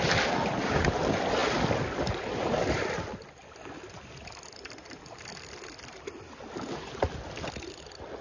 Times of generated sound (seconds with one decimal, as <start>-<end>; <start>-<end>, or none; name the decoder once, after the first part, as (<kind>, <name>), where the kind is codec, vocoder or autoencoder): none